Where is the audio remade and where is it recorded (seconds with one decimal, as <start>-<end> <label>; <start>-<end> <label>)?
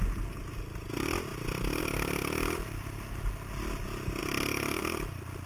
0.0-4.2 recorded; 4.2-4.8 remade; 4.8-5.5 recorded